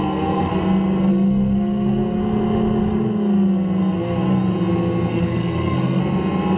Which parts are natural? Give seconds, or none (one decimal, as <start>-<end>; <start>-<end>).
0.5-1.1; 2.2-5.1; 6.0-6.6